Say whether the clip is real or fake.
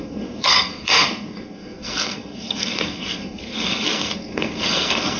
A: fake